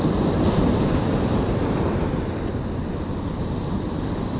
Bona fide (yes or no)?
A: yes